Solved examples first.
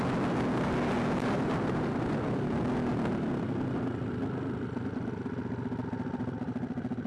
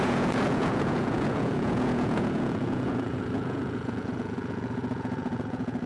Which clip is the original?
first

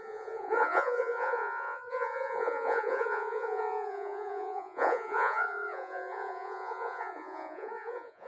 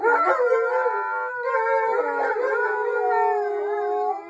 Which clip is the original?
second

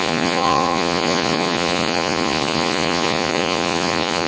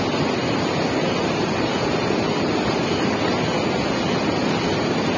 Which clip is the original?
second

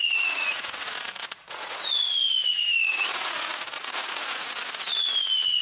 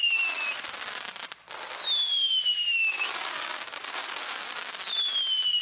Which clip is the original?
second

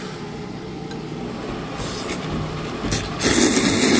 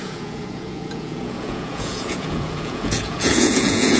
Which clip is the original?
first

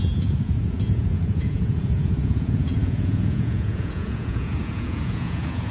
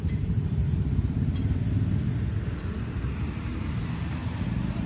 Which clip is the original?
second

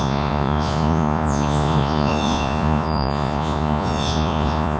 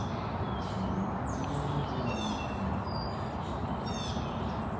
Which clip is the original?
second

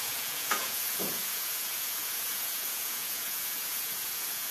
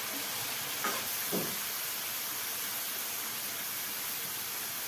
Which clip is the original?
second